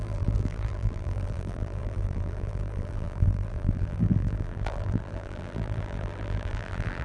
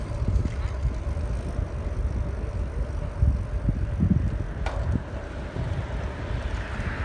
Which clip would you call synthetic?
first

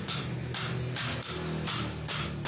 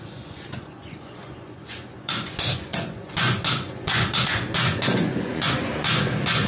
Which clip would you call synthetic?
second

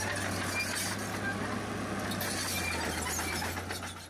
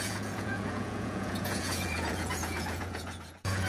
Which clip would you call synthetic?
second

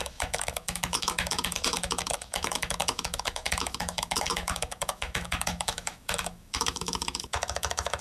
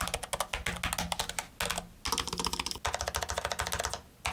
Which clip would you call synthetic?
first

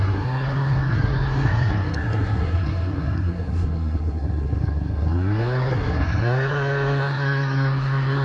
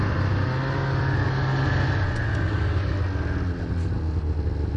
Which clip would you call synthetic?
first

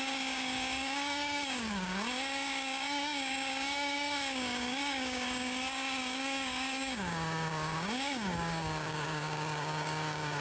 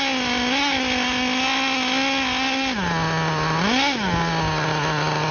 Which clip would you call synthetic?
first